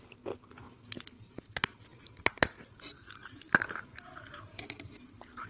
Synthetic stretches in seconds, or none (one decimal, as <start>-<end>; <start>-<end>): 3.2-4.6